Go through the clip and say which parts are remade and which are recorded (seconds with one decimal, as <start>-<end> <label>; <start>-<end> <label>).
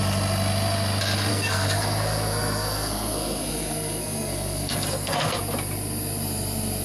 0.0-1.3 recorded; 1.3-5.4 remade; 5.4-6.8 recorded